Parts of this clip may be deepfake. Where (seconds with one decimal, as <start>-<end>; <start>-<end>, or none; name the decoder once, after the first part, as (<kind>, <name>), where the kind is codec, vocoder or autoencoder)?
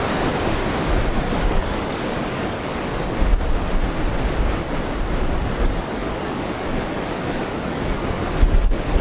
0.0-0.6 (codec, DAC); 1.5-3.3; 5.4-9.0